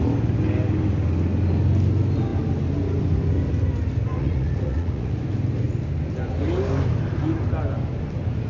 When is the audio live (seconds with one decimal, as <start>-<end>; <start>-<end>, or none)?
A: 0.0-4.1; 5.2-8.5